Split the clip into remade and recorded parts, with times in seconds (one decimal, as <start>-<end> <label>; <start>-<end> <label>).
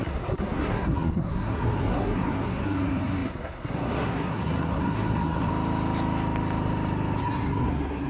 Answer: 0.0-5.5 remade; 5.5-7.2 recorded; 7.2-8.1 remade